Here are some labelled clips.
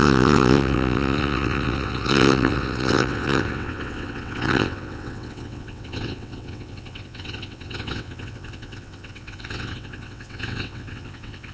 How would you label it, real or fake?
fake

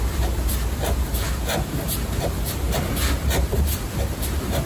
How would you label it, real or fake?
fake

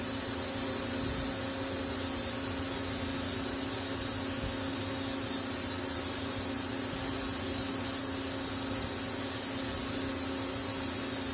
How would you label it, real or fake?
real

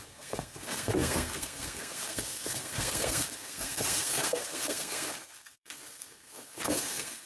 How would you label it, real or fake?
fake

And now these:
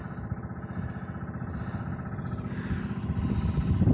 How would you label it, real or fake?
real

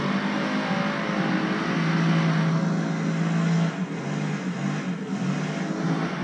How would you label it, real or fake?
real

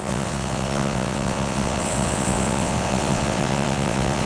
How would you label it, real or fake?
fake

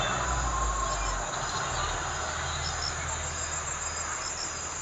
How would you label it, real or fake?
real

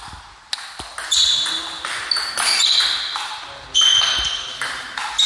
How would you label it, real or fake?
real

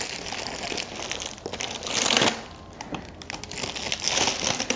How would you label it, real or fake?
real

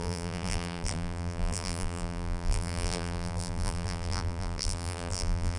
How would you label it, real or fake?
fake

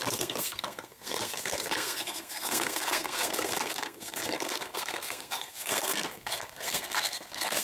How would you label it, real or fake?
fake